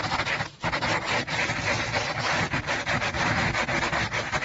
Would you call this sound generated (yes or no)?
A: no